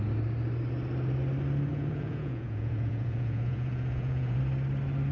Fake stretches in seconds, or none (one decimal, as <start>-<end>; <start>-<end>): 1.7-4.4